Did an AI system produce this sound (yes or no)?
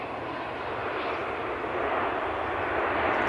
no